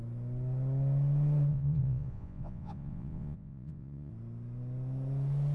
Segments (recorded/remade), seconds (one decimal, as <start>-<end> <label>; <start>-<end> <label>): 0.0-1.5 recorded; 1.5-4.1 remade; 4.1-5.5 recorded